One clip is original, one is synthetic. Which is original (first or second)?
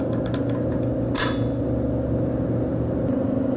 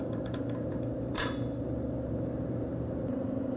first